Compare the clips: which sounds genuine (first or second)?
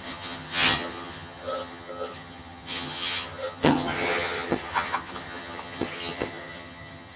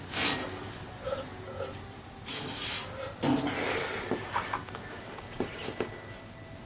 second